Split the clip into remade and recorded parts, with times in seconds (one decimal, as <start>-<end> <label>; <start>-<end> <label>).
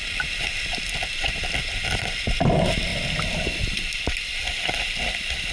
0.0-2.9 remade; 2.9-4.0 recorded; 4.0-5.5 remade